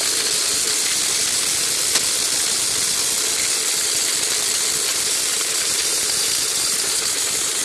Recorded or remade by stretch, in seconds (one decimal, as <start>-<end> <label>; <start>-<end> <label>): 0.0-4.9 recorded; 4.9-7.6 remade